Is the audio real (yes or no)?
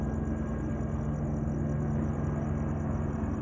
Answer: yes